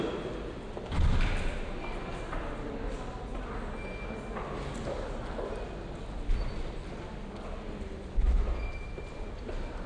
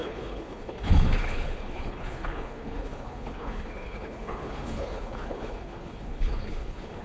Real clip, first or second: first